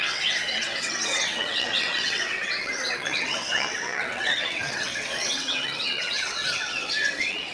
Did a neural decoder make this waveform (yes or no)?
yes